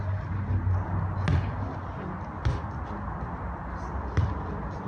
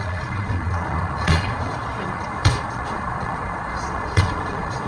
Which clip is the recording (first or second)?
first